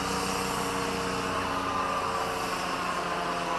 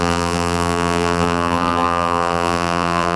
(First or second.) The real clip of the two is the first